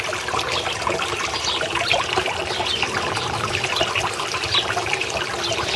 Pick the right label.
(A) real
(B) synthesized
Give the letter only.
A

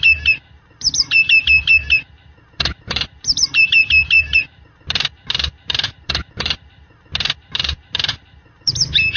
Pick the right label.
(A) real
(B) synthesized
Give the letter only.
B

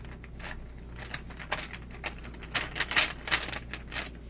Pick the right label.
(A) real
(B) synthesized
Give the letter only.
A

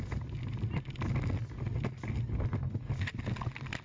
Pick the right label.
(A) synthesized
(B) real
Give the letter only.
B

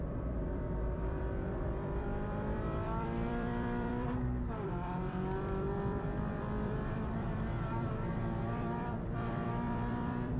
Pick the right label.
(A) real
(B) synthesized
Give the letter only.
B